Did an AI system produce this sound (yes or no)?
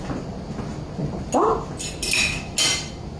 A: no